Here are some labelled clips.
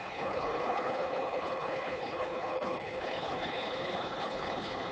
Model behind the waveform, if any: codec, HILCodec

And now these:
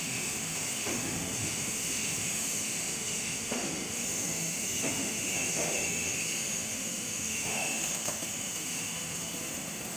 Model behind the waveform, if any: autoencoder, DAC-VAE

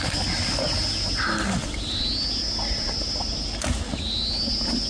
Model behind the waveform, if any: none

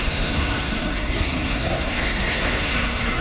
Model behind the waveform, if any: codec, SNAC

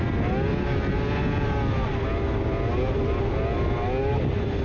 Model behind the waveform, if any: none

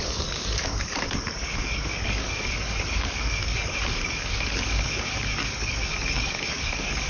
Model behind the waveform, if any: codec, DAC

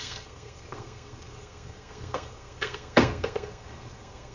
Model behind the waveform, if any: codec, SNAC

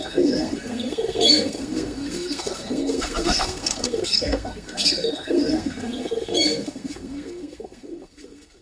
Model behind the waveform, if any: codec, SNAC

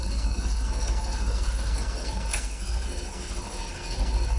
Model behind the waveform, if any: codec, SNAC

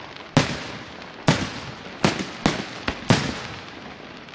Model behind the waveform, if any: none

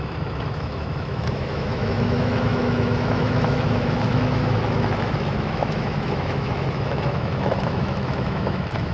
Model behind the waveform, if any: autoencoder, DAC-VAE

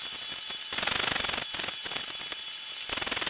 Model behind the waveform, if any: none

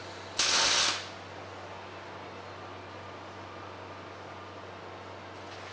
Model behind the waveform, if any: none